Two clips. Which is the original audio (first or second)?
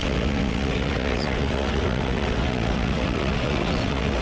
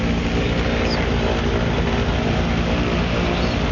second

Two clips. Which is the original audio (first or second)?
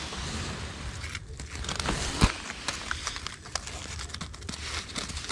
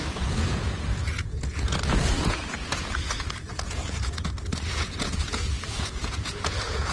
first